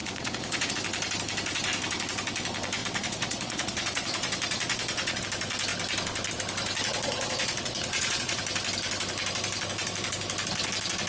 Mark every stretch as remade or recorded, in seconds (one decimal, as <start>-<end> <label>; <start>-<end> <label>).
0.0-0.7 remade; 0.7-2.8 recorded; 2.8-5.2 remade; 5.2-6.9 recorded; 6.9-8.4 remade; 8.4-11.1 recorded